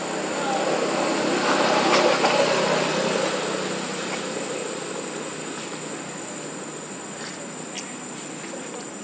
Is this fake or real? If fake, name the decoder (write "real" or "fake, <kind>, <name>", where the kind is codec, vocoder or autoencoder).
real